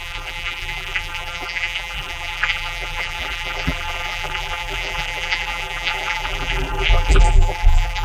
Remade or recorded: remade